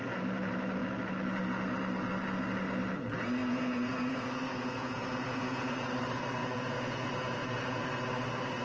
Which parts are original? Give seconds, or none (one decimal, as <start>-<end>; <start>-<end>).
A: 0.0-3.4; 5.9-6.4; 7.8-8.6